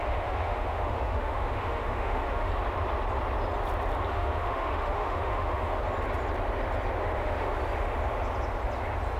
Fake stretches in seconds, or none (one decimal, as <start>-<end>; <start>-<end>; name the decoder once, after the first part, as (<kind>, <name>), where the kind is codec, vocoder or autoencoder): 0.0-2.5 (autoencoder, DAC-VAE); 4.1-5.8; 7.0-7.5